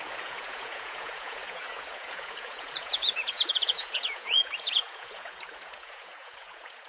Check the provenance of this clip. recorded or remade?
remade